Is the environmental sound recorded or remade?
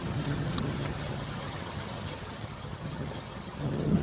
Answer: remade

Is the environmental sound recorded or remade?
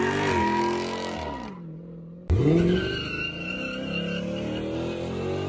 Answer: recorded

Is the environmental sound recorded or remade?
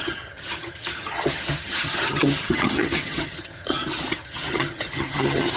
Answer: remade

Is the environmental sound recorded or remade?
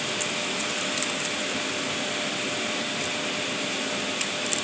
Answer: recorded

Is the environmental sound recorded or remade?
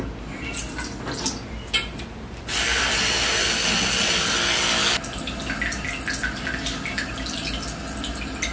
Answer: recorded